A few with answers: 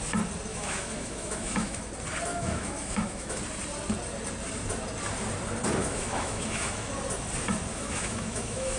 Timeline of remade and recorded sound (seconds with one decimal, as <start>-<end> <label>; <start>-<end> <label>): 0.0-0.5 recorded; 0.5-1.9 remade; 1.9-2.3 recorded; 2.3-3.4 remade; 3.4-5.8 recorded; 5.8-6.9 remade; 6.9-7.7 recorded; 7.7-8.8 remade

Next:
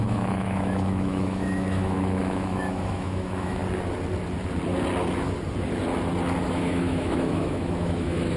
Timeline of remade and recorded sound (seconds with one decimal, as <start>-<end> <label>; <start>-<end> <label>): 0.0-3.6 remade; 3.6-6.5 recorded; 6.5-8.4 remade

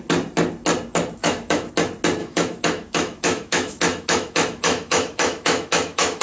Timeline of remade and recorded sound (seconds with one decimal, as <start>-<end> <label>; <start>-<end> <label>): 0.0-1.2 recorded; 1.2-1.7 remade; 1.7-2.2 recorded; 2.2-6.2 remade

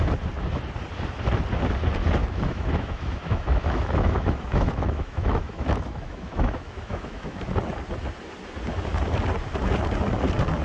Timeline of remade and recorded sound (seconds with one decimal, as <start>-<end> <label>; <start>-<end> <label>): 0.0-2.2 recorded; 2.2-7.4 remade; 7.4-10.6 recorded

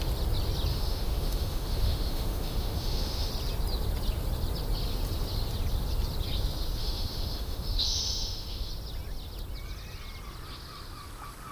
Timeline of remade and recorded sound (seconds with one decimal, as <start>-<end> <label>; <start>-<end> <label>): 0.0-0.7 recorded; 0.7-3.3 remade; 3.3-6.8 recorded; 6.8-8.7 remade; 8.7-11.5 recorded

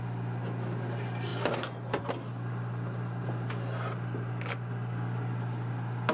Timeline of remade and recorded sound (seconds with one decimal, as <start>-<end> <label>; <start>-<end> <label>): 0.0-6.1 recorded

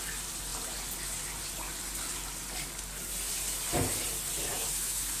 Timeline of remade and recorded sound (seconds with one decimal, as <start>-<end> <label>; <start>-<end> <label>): 0.0-4.5 recorded; 4.5-5.2 remade

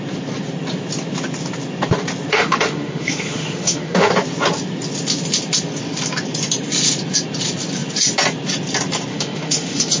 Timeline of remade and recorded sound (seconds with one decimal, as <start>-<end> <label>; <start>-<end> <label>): 0.0-2.3 recorded; 2.3-4.1 remade; 4.1-9.1 recorded; 9.1-10.0 remade